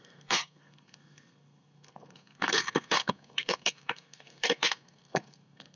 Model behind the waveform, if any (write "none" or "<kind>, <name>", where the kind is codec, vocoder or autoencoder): codec, SNAC